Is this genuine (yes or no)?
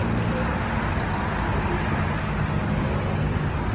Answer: yes